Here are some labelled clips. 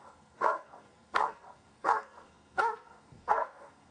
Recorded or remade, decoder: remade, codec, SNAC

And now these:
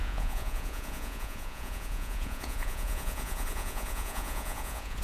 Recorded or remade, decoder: remade, vocoder, Vocos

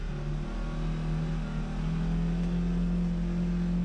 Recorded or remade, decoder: recorded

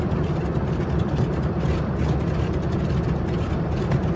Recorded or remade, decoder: recorded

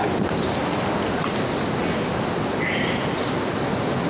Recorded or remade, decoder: recorded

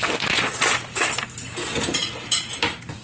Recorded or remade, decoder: recorded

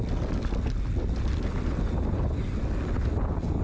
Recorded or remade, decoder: recorded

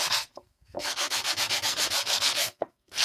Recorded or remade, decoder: remade, codec, SNAC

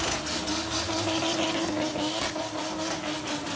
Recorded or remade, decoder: recorded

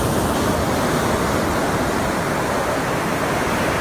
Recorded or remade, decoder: recorded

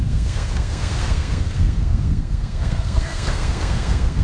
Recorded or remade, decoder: remade, codec, SNAC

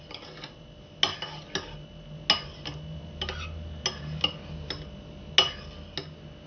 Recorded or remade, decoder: recorded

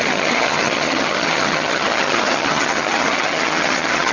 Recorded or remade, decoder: remade, vocoder, HiFi-GAN